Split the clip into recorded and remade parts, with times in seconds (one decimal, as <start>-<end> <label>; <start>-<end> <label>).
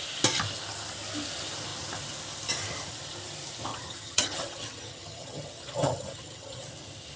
0.0-3.7 recorded; 3.7-6.7 remade; 6.7-7.2 recorded